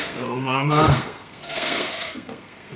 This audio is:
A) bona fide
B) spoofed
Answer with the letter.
B